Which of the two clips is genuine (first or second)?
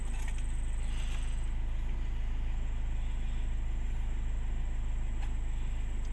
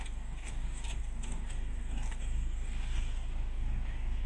first